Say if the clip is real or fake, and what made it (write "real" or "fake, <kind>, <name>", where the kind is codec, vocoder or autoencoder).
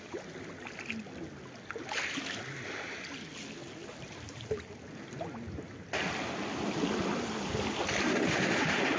real